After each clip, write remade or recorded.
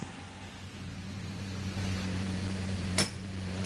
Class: remade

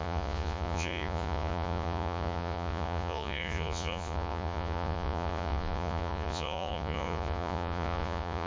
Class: remade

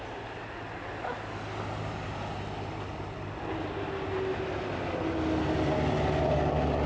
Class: recorded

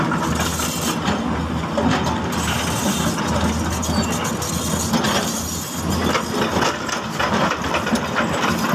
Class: recorded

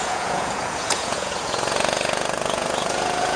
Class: remade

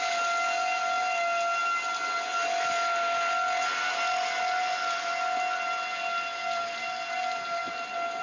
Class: recorded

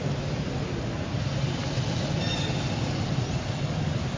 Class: recorded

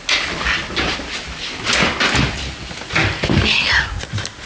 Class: recorded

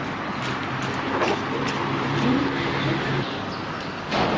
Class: recorded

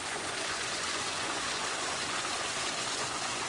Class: remade